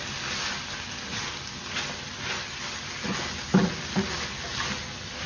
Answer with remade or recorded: recorded